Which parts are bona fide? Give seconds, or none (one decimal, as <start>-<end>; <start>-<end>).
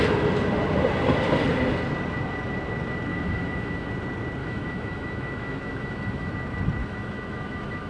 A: 0.0-3.1; 3.9-4.4; 6.3-6.8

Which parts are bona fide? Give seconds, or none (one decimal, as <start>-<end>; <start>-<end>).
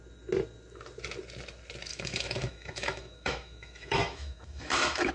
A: 0.0-1.9